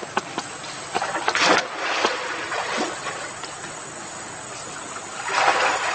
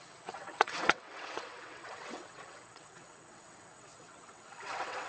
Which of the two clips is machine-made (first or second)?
second